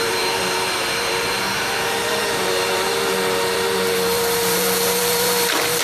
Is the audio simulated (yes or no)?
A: yes